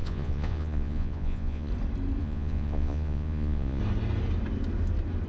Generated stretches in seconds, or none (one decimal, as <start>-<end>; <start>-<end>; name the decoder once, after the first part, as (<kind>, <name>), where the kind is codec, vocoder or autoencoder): 0.0-1.7 (vocoder, Vocos); 2.2-3.8